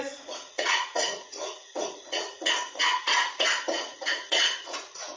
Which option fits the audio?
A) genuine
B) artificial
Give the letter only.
B